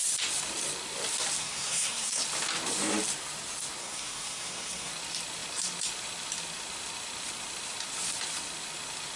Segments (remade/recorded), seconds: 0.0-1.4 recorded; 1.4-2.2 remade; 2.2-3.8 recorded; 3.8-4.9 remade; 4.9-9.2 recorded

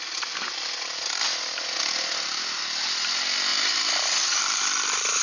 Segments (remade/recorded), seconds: 0.0-5.2 recorded

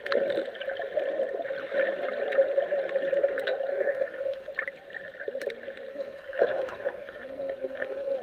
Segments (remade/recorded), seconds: 0.0-3.7 recorded; 3.7-4.5 remade; 4.5-5.9 recorded; 5.9-8.2 remade

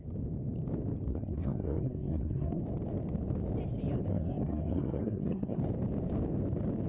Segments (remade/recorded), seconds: 0.0-1.1 recorded; 1.1-2.6 remade; 2.6-4.1 recorded; 4.1-5.6 remade; 5.6-6.9 recorded